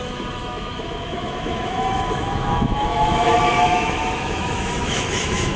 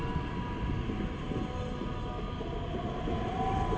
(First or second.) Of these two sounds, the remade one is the first